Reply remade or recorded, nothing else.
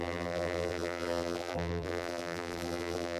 remade